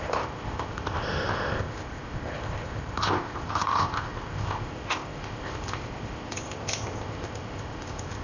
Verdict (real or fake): fake